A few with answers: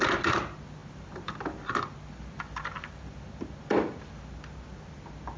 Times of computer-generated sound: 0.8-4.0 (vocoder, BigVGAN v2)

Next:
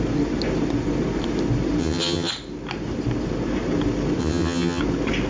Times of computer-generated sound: 1.8-2.3 (vocoder, HiFi-GAN); 4.2-4.8

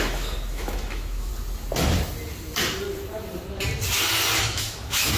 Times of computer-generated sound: 0.0-1.3 (autoencoder, DAC-VAE); 4.4-5.2

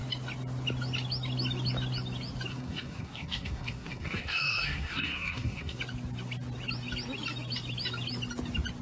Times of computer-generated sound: 2.5-5.8 (codec, SNAC)

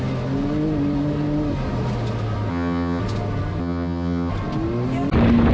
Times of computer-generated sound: 2.5-3.0 (vocoder, HiFi-GAN); 3.6-4.3

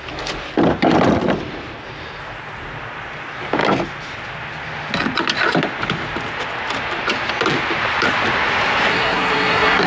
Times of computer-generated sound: 8.9-9.9 (codec, SNAC)

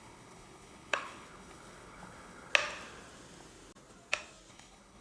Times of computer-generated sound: 0.0-2.5 (codec, HILCodec); 4.5-5.0